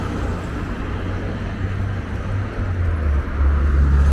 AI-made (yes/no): no